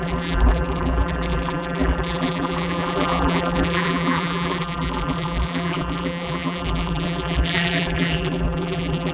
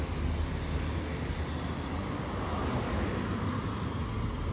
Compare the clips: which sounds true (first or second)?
second